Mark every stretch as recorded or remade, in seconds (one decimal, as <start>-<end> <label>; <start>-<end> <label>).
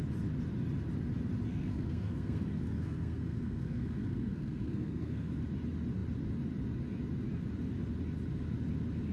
0.0-1.5 recorded; 1.5-5.3 remade; 5.3-9.1 recorded